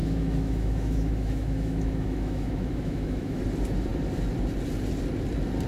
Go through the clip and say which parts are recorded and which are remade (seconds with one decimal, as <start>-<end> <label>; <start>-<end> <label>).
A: 0.0-3.4 remade; 3.4-5.7 recorded